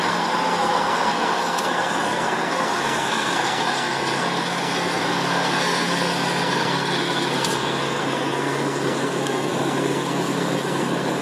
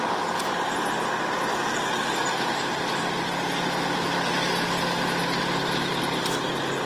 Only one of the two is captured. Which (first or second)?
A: second